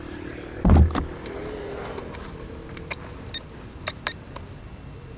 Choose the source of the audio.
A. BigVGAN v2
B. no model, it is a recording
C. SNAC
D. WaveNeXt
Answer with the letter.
B